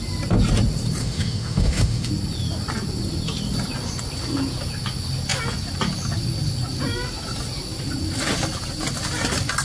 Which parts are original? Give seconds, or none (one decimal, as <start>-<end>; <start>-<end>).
0.0-1.0; 2.1-9.6